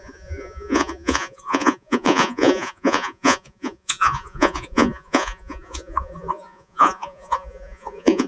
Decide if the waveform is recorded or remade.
remade